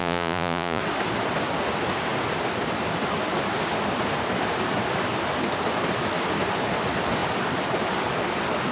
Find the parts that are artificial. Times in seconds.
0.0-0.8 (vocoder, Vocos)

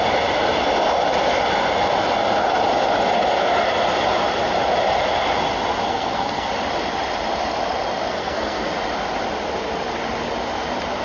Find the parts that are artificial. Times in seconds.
5.9-6.5 (codec, SNAC); 8.1-8.7

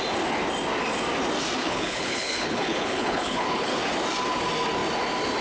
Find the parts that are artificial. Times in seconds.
1.6-3.8 (codec, HILCodec)

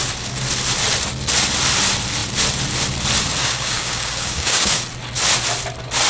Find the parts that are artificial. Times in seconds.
3.4-4.8 (codec, DAC)

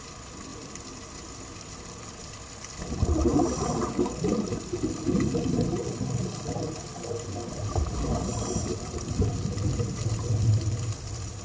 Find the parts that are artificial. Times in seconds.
0.0-5.8 (vocoder, BigVGAN v2); 7.5-11.4

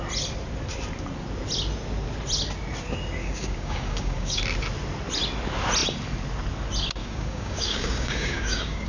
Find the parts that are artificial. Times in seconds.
3.2-4.4 (codec, DAC); 7.0-8.9

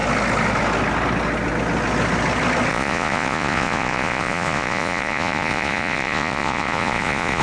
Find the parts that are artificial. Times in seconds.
2.7-7.4 (vocoder, Vocos)